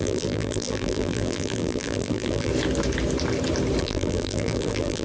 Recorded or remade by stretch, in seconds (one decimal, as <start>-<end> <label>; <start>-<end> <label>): 0.0-2.5 remade; 2.5-3.8 recorded; 3.8-5.0 remade